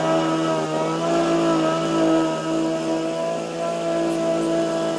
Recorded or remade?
recorded